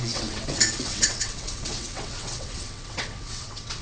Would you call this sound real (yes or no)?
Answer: no